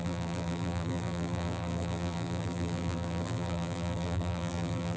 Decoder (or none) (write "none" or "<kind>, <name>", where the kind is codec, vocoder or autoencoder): vocoder, BigVGAN v2